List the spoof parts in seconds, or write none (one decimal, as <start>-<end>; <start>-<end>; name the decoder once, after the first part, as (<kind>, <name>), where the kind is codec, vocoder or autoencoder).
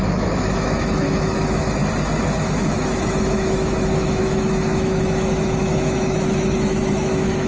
0.0-1.8 (autoencoder, DAC-VAE); 2.4-7.5